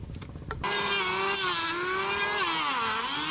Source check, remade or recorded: recorded